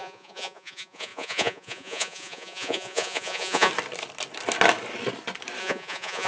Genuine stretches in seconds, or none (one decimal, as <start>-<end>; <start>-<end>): 3.7-5.6